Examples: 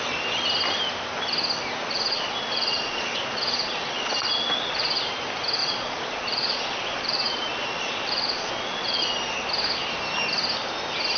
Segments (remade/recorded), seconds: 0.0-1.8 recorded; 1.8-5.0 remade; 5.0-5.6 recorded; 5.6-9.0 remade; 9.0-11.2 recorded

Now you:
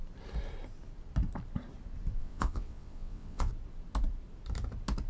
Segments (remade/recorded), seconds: 0.0-2.2 recorded; 2.2-3.5 remade; 3.5-5.1 recorded

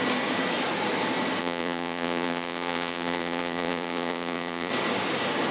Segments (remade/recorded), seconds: 0.0-1.4 recorded; 1.4-4.7 remade; 4.7-5.5 recorded

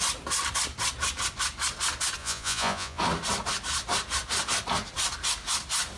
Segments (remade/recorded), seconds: 0.0-2.2 recorded; 2.2-3.0 remade; 3.0-6.0 recorded